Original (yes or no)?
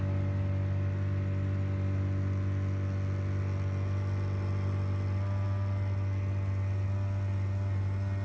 yes